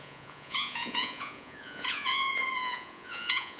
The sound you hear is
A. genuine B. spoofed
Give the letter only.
B